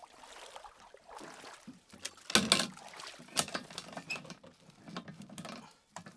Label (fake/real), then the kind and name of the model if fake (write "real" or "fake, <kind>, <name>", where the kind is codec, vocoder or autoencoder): real